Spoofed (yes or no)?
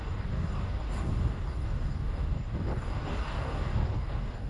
yes